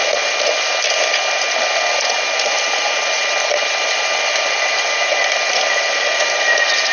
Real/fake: real